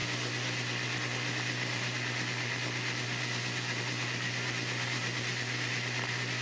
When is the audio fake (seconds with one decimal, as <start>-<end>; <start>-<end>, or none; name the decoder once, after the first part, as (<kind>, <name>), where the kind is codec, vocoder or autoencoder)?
none